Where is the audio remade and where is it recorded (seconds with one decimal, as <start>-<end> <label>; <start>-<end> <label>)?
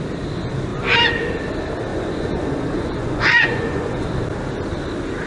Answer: 0.0-1.9 recorded; 1.9-4.1 remade; 4.1-5.3 recorded